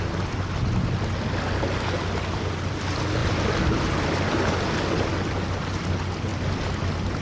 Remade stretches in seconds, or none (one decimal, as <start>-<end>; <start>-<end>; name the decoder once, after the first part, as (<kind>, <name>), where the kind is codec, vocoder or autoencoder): none